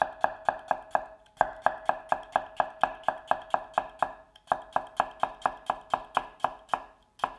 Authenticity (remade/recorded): recorded